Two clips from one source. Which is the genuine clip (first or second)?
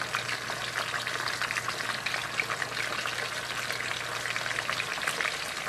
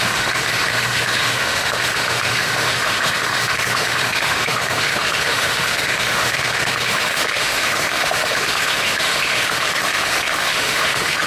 first